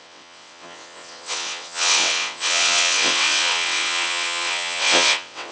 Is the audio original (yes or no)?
no